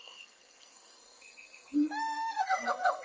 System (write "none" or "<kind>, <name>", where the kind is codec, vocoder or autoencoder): codec, SNAC